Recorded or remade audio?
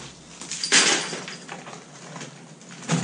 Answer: recorded